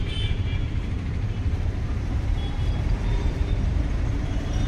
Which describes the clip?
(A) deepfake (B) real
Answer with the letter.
A